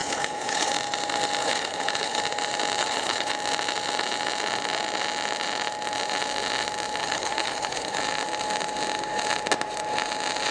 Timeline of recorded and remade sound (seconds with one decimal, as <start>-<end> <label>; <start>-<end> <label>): 0.0-0.7 remade; 0.7-1.4 recorded; 1.4-2.2 remade; 2.2-2.8 recorded; 2.8-3.3 remade; 3.3-7.0 recorded; 7.0-8.0 remade; 8.0-10.5 recorded

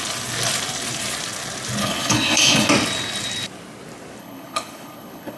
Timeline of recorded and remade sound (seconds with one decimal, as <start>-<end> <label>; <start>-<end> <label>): 0.0-1.8 recorded; 1.8-2.7 remade; 2.7-4.2 recorded; 4.2-5.4 remade

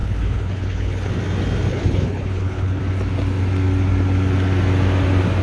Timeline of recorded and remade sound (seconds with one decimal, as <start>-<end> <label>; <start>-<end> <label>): 0.0-1.1 remade; 1.1-1.7 recorded; 1.7-2.8 remade; 2.8-5.4 recorded

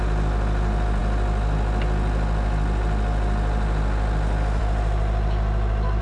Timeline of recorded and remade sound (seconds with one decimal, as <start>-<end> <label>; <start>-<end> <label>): 0.0-6.0 recorded